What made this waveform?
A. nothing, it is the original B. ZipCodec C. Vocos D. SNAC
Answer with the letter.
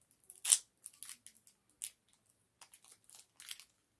A